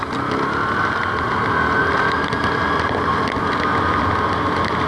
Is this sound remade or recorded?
recorded